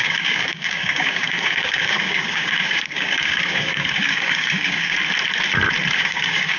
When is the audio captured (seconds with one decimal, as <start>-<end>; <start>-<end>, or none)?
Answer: 5.0-5.9